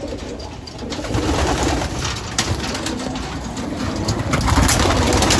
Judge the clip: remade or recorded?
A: recorded